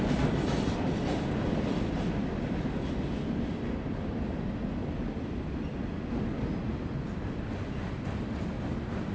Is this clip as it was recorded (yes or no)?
yes